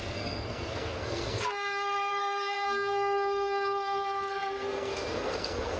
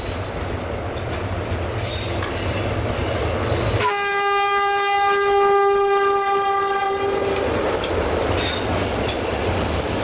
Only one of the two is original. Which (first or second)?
second